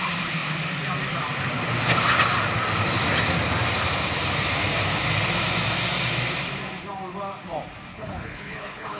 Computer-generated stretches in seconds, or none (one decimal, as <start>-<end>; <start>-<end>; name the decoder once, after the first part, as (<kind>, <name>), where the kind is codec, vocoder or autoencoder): 7.9-9.0 (codec, HILCodec)